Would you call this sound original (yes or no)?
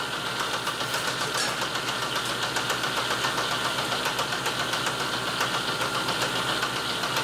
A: yes